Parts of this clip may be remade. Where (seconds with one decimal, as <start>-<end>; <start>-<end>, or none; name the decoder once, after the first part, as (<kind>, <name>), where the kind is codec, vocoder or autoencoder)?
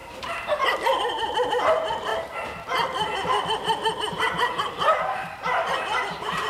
0.0-0.6 (vocoder, BigVGAN v2)